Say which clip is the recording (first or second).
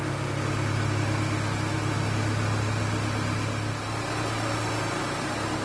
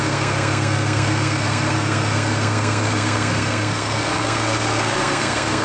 first